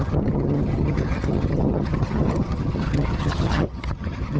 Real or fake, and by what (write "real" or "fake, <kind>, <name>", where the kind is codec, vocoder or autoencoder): fake, vocoder, HiFi-GAN